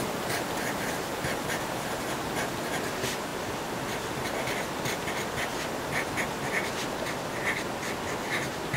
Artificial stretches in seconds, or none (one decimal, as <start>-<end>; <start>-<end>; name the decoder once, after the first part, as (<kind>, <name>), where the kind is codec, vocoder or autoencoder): none